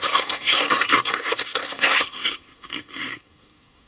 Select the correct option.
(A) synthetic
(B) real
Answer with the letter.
A